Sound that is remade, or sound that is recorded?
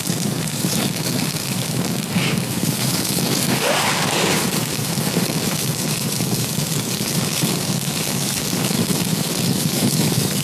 remade